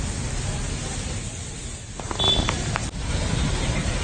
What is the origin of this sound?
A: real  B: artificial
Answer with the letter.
A